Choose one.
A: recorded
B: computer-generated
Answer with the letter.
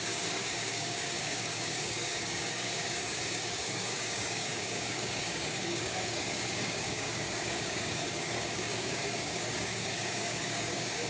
B